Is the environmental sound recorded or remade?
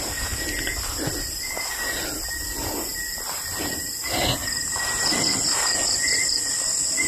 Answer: recorded